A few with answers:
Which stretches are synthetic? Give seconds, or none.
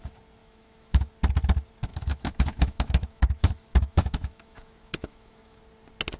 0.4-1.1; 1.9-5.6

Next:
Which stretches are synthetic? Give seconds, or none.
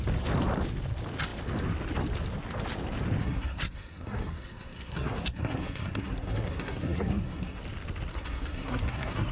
3.2-7.6; 8.1-9.3